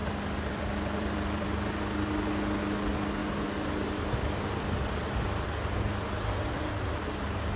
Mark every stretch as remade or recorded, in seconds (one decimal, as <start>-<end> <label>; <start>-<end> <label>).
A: 0.0-1.8 remade; 1.8-7.6 recorded